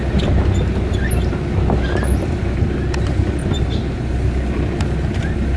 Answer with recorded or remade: recorded